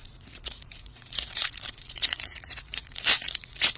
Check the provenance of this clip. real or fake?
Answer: fake